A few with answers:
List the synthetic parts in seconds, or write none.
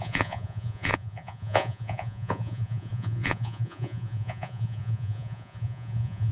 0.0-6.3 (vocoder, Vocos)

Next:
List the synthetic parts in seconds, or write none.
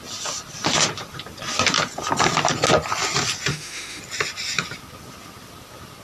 3.5-4.0 (autoencoder, DAC-VAE)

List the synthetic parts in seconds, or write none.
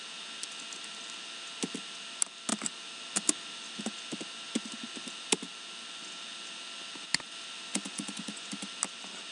7.7-8.5 (vocoder, Vocos)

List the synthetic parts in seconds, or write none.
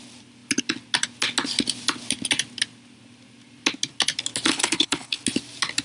4.5-5.2 (codec, HILCodec)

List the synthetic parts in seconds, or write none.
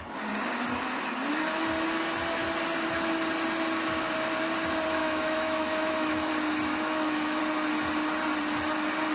5.0-6.3 (autoencoder, DAC-VAE); 6.7-7.4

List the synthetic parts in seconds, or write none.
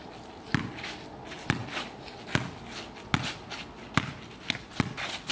none